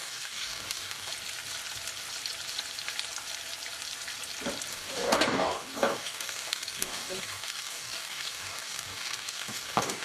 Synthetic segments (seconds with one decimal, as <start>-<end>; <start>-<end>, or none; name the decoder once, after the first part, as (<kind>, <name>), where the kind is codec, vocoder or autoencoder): 0.0-1.1 (codec, DAC); 4.7-10.0

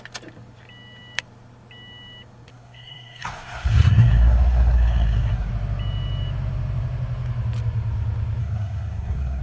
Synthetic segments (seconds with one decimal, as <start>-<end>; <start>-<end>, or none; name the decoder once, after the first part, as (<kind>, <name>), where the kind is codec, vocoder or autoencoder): 2.5-5.5 (codec, SNAC); 8.4-9.4

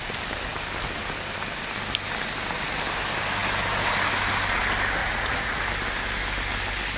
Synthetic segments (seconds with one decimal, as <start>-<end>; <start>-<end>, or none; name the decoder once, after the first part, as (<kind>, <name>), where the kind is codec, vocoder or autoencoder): 5.0-5.6 (vocoder, Vocos)

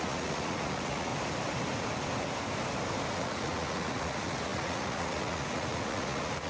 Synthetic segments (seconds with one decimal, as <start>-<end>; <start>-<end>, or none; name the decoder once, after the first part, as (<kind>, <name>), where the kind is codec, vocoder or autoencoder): 0.0-1.1 (vocoder, Vocos); 3.1-6.5

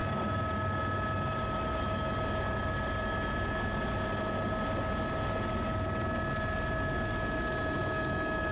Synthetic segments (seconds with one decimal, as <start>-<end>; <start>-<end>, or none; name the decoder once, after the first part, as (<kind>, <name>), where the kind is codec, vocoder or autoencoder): none

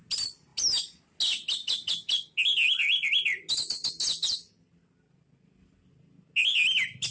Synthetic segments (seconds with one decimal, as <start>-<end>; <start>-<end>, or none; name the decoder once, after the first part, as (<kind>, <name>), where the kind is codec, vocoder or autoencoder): none